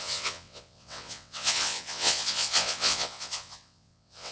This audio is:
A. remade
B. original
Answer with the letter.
A